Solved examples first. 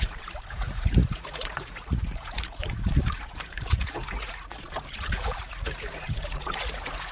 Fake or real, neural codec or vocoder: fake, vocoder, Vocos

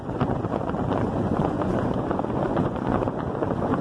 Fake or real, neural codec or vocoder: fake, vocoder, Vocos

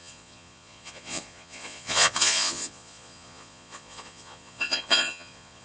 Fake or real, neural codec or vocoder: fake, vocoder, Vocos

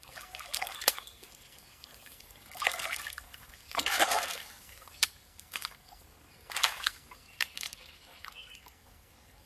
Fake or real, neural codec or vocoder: fake, codec, SNAC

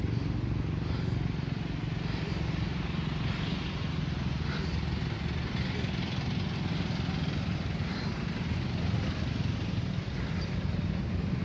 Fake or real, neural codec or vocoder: real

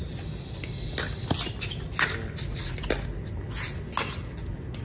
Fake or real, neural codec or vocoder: real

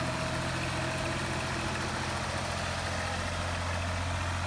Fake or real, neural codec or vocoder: real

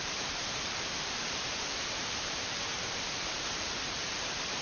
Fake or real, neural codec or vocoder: fake, vocoder, BigVGAN v2